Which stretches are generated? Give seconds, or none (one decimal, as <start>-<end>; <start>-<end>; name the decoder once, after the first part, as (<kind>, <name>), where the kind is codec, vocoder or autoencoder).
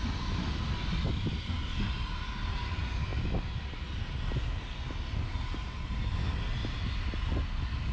none